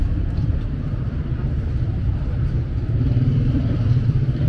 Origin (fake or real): fake